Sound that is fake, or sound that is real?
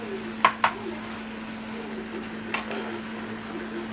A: real